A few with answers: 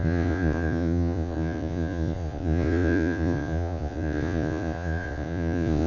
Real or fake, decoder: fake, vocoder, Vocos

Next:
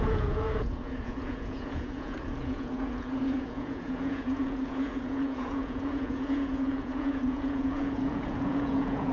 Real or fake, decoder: fake, vocoder, Vocos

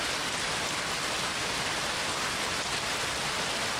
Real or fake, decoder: real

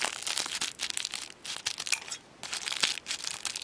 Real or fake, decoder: real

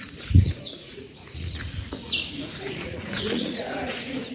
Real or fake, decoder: fake, vocoder, Vocos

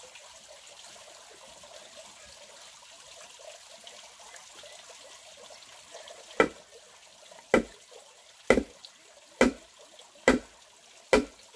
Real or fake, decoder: real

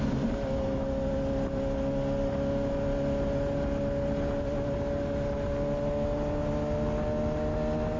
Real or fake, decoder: real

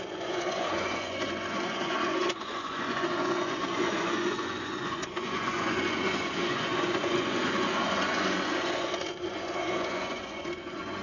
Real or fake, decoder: fake, vocoder, Vocos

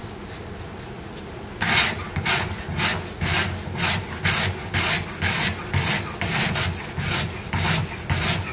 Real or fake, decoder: real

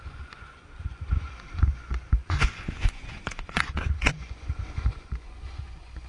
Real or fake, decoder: fake, vocoder, Vocos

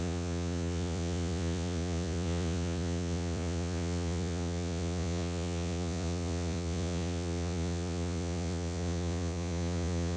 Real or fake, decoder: fake, vocoder, Vocos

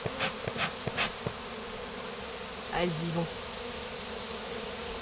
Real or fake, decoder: real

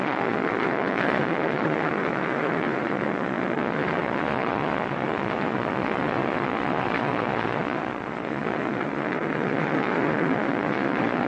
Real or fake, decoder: fake, vocoder, Vocos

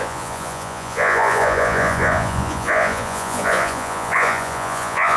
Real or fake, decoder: fake, vocoder, Vocos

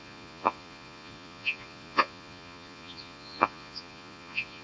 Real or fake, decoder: fake, vocoder, Vocos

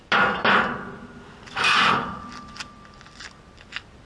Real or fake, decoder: real